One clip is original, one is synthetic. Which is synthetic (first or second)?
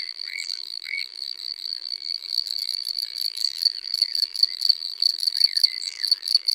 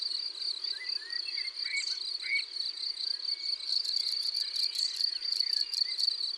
first